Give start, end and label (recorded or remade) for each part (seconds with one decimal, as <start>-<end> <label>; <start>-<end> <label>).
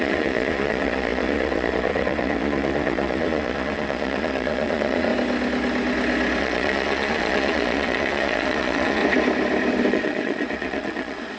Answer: 0.0-5.1 remade; 5.1-6.4 recorded; 6.4-9.0 remade; 9.0-9.9 recorded; 9.9-11.4 remade